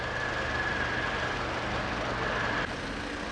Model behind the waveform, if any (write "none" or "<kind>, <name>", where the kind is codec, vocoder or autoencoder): none